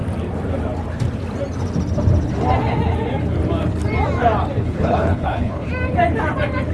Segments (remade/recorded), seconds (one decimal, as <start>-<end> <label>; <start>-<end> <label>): 0.0-4.6 recorded; 4.6-5.7 remade; 5.7-6.7 recorded